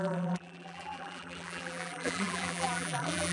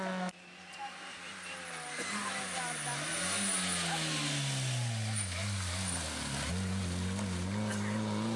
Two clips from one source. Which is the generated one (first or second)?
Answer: first